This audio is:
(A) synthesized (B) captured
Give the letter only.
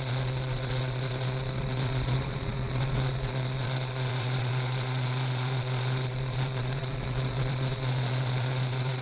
A